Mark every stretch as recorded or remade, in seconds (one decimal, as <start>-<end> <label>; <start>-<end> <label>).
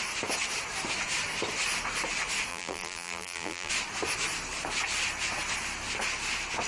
0.0-2.5 recorded; 2.5-3.7 remade; 3.7-6.7 recorded